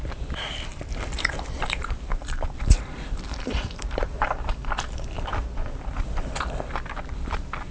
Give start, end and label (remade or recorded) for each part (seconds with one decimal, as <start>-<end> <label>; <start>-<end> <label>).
0.0-0.7 recorded; 0.7-5.3 remade; 5.3-7.7 recorded